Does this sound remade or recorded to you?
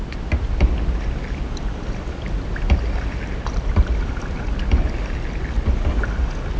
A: recorded